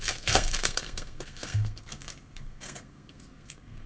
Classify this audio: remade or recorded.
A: remade